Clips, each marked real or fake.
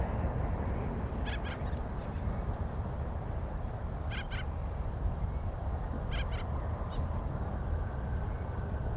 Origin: real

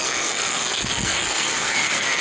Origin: fake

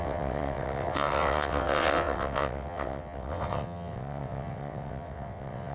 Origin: fake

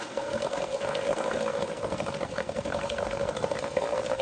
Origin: fake